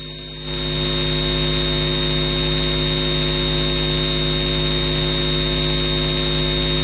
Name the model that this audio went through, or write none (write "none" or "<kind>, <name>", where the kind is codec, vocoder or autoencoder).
none